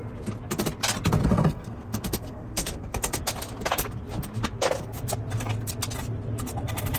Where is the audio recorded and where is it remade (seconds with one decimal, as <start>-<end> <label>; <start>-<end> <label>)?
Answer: 0.0-1.2 recorded; 1.2-3.2 remade; 3.2-7.0 recorded